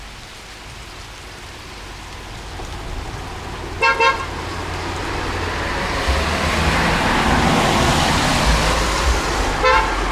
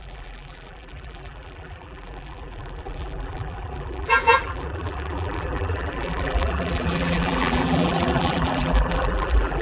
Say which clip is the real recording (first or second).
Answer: first